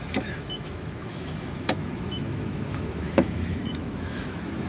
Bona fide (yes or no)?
no